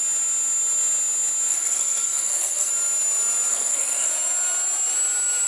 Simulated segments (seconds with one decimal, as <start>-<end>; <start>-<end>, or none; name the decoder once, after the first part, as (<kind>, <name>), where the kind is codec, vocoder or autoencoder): 1.5-2.7 (codec, SNAC); 3.5-4.1